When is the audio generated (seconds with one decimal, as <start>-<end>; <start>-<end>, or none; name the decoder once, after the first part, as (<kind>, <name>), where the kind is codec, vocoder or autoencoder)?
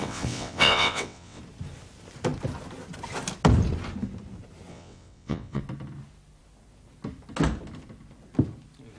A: 0.0-1.4 (vocoder, WaveNeXt); 4.7-5.6